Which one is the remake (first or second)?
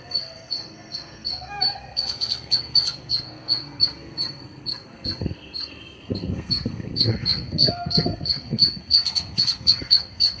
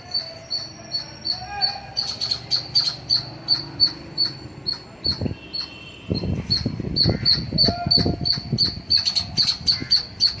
first